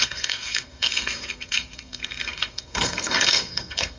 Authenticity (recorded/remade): remade